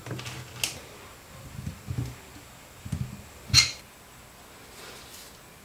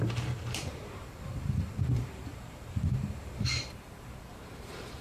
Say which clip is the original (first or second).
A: first